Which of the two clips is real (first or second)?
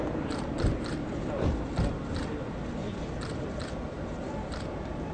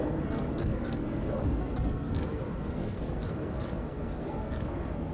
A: first